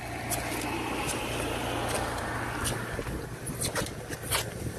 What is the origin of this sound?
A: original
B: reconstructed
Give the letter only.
A